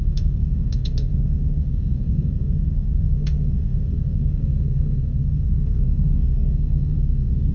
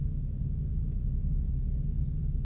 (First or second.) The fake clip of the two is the first